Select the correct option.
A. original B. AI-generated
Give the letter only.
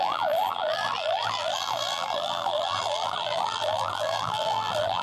B